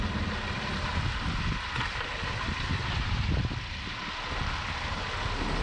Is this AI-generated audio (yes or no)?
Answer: no